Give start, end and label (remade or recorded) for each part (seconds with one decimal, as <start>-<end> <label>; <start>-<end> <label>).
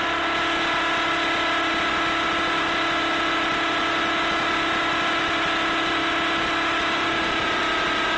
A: 0.0-8.2 recorded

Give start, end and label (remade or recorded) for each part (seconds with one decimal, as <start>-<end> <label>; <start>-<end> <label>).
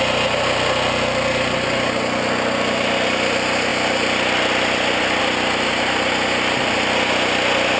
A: 0.0-7.8 recorded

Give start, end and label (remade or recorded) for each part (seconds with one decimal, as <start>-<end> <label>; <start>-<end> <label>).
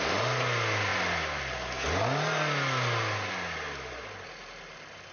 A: 0.0-5.1 recorded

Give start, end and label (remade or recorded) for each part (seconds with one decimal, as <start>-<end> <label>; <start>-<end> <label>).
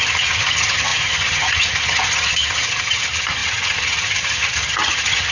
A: 0.0-5.3 remade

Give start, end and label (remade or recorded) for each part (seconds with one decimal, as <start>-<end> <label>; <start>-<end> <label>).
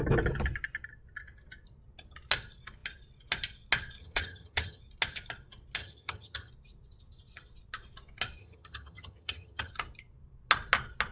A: 0.0-4.0 recorded; 4.0-4.8 remade; 4.8-5.8 recorded; 5.8-6.5 remade; 6.5-8.4 recorded; 8.4-9.7 remade; 9.7-11.1 recorded